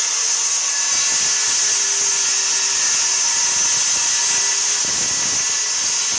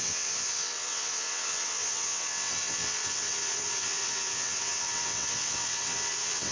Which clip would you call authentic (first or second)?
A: first